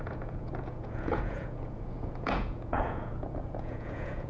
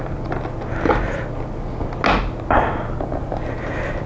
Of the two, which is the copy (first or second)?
first